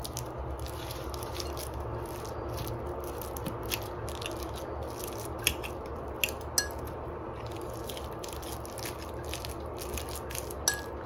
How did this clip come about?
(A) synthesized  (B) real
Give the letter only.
B